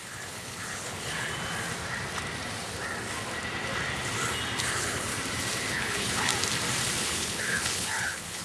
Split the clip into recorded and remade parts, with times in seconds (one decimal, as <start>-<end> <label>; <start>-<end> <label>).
0.0-1.3 remade; 1.3-4.6 recorded; 4.6-5.1 remade; 5.1-5.7 recorded; 5.7-6.3 remade; 6.3-7.0 recorded; 7.0-8.4 remade